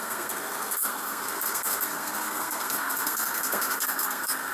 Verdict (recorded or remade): remade